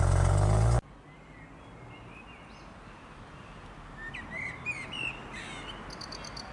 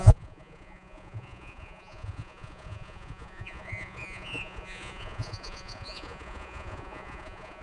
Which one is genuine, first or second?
first